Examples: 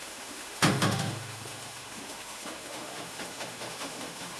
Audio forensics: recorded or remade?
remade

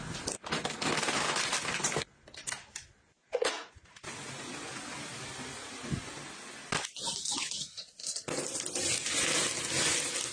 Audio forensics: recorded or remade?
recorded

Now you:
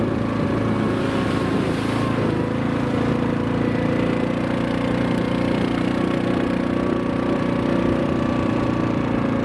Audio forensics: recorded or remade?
recorded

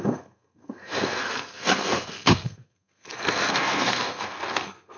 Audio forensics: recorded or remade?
remade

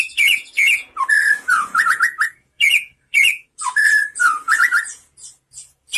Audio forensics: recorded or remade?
remade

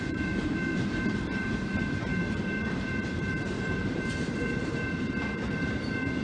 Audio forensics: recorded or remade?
remade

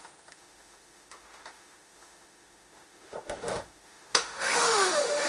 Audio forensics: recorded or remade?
remade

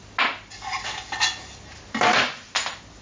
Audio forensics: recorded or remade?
recorded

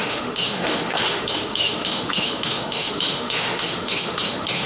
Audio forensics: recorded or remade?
remade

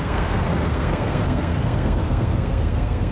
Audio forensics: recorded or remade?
remade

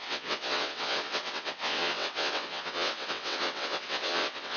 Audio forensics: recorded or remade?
remade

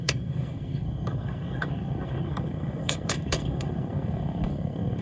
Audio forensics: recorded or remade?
remade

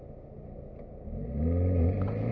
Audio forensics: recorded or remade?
recorded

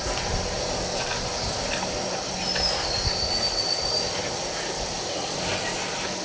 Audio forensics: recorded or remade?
recorded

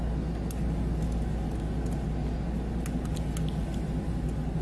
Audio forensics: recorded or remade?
recorded